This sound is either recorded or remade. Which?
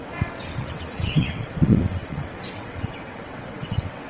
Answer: remade